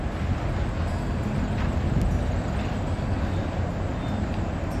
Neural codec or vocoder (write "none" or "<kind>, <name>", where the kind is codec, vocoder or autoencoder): none